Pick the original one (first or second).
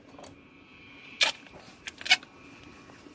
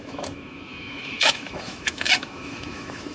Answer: first